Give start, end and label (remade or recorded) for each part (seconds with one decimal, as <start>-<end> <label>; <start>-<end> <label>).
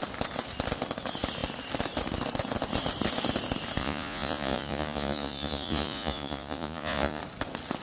0.0-3.8 recorded; 3.8-7.2 remade; 7.2-7.8 recorded